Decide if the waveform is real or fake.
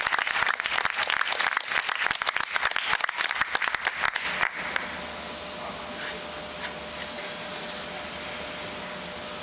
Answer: real